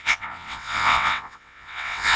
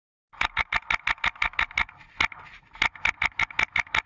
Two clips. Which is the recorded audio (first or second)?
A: second